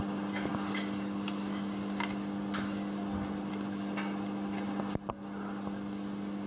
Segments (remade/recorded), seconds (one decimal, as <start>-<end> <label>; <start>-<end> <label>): 0.0-6.5 recorded